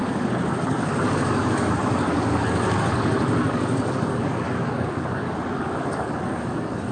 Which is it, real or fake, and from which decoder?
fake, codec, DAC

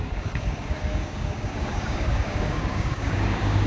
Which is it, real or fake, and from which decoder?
fake, codec, DAC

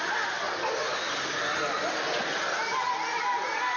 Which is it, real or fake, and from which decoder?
real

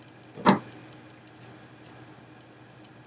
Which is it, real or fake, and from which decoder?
real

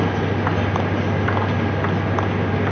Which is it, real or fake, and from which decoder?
real